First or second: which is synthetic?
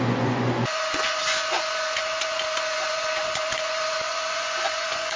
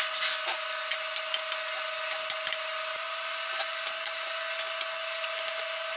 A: first